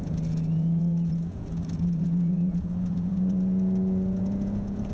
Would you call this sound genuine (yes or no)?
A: no